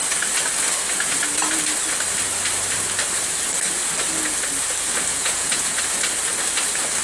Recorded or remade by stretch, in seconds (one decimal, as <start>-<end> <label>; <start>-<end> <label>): 0.0-5.1 recorded; 5.1-5.8 remade; 5.8-7.0 recorded